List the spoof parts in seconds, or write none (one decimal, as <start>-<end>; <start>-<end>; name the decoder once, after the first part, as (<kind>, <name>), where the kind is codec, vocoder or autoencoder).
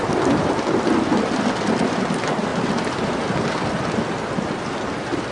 none